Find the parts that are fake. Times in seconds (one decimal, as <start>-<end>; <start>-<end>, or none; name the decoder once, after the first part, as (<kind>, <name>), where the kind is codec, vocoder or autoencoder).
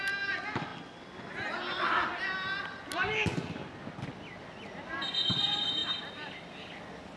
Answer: none